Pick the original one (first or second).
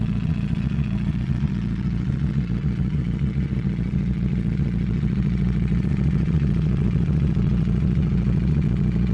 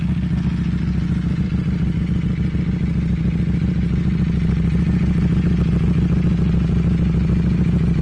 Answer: second